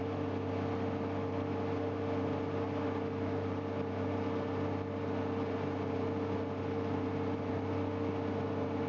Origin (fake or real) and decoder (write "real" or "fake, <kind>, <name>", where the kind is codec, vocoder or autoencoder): real